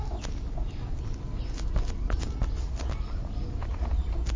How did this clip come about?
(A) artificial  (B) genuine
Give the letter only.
B